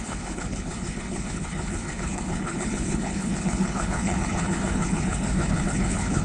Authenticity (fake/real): fake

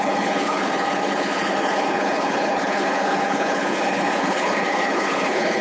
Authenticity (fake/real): fake